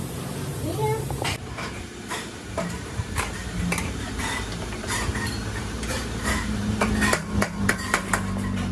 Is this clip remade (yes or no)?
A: yes